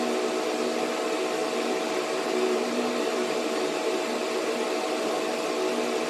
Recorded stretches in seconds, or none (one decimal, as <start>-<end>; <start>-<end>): 0.0-1.4; 5.1-6.1